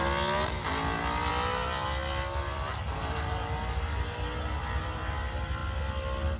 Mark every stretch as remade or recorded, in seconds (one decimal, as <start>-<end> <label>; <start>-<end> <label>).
0.0-6.4 recorded